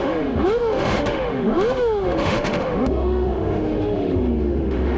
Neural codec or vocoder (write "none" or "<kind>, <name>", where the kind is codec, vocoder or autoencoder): autoencoder, DAC-VAE